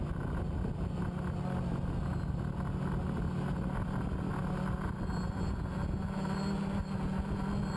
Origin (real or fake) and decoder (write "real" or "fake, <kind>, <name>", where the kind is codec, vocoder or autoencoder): real